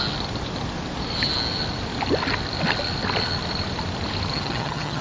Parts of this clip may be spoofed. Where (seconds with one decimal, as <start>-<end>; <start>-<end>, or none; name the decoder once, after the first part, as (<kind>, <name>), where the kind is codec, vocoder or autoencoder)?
4.3-5.0 (vocoder, HiFi-GAN)